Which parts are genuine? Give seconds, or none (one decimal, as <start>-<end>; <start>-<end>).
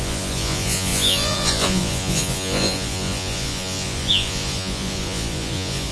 none